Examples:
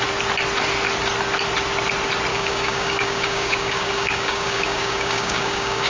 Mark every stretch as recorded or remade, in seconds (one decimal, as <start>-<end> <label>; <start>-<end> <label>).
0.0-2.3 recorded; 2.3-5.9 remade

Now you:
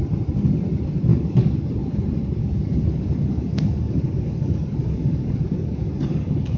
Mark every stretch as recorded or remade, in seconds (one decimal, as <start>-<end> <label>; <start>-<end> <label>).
0.0-1.1 recorded; 1.1-1.7 remade; 1.7-2.4 recorded; 2.4-6.6 remade

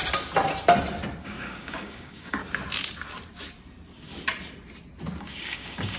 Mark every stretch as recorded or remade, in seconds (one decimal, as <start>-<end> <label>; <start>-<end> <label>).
0.0-1.2 recorded; 1.2-2.4 remade; 2.4-5.2 recorded; 5.2-6.0 remade

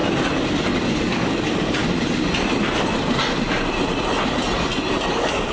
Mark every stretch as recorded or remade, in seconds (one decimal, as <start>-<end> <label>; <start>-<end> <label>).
0.0-0.9 recorded; 0.9-1.8 remade; 1.8-5.1 recorded; 5.1-5.5 remade